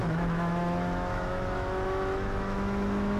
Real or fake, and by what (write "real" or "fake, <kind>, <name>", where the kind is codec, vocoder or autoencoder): fake, autoencoder, DAC-VAE